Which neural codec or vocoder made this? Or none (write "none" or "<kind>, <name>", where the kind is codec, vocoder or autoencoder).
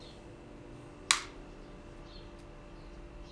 none